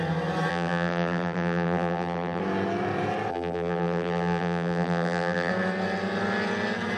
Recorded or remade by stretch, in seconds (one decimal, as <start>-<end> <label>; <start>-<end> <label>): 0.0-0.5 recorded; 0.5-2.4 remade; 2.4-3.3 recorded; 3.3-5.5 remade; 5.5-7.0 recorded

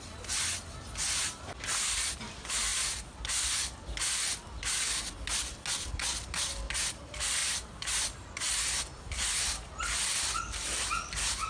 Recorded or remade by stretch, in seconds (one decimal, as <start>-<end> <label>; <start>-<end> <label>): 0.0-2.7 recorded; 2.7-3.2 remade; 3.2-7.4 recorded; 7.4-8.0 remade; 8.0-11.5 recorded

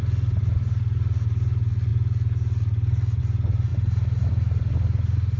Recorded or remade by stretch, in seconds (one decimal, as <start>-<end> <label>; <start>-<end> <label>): 0.0-5.4 recorded